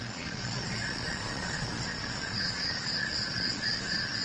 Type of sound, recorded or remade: remade